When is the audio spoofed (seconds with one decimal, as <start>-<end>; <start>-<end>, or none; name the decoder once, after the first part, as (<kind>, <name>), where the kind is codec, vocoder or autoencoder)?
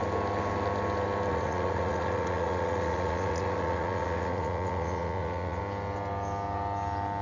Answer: 1.3-5.6 (vocoder, Vocos)